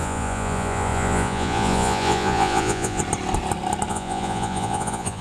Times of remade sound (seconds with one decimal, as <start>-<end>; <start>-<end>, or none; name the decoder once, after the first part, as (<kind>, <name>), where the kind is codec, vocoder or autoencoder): 0.0-3.0 (vocoder, Vocos); 3.9-5.2